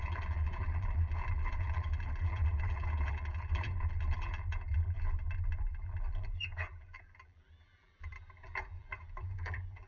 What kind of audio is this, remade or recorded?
remade